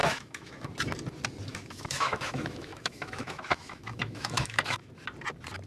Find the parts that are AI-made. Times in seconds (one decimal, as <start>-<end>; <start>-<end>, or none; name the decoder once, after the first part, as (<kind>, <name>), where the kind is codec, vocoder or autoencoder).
0.0-0.7 (autoencoder, DAC-VAE); 1.5-4.9